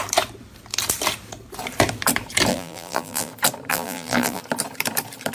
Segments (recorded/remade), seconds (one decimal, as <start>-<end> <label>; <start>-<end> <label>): 0.0-2.5 recorded; 2.5-3.3 remade; 3.3-3.7 recorded; 3.7-4.4 remade; 4.4-5.3 recorded